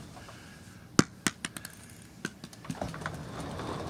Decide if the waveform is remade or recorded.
recorded